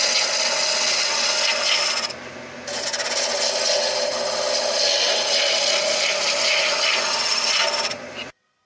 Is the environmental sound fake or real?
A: real